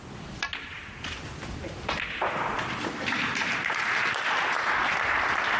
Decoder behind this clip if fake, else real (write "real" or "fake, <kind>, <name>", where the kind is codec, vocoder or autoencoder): real